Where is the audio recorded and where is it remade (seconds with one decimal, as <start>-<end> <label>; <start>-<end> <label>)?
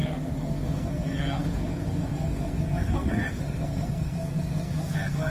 0.0-5.3 remade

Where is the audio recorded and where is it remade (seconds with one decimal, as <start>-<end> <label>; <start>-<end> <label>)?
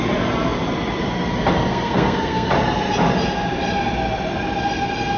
0.0-1.7 recorded; 1.7-2.5 remade; 2.5-5.2 recorded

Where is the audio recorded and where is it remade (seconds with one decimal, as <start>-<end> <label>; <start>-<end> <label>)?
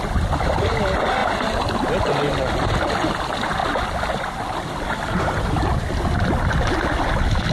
0.0-7.5 recorded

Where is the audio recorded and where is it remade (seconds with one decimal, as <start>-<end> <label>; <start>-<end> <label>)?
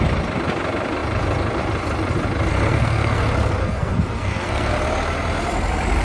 0.0-2.5 recorded; 2.5-3.2 remade; 3.2-3.6 recorded; 3.6-4.7 remade; 4.7-6.0 recorded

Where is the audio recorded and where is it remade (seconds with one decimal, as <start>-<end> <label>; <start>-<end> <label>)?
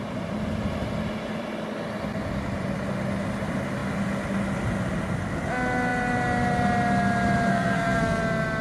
0.0-7.5 recorded; 7.5-8.2 remade; 8.2-8.6 recorded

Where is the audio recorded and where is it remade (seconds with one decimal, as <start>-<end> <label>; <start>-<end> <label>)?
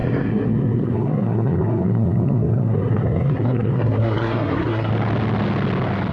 0.0-4.9 remade; 4.9-6.1 recorded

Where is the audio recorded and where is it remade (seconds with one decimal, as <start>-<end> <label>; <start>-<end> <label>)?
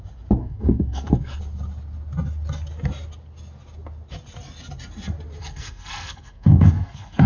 0.0-0.4 recorded; 0.4-1.4 remade; 1.4-5.4 recorded; 5.4-7.3 remade